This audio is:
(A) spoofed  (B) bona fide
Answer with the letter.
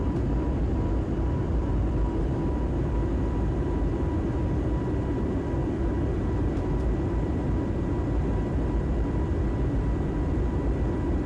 A